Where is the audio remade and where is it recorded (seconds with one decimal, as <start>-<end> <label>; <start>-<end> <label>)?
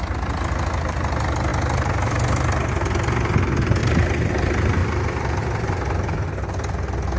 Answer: 0.0-7.2 recorded